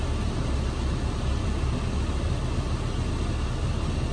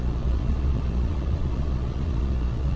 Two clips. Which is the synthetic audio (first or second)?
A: second